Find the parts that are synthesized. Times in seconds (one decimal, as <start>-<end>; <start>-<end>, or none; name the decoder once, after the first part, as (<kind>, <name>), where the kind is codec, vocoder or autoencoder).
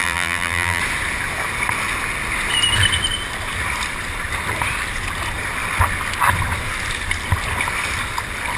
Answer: 0.0-0.8 (vocoder, BigVGAN v2)